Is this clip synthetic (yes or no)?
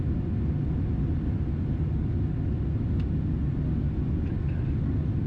no